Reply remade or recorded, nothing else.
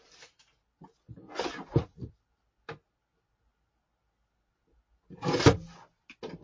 recorded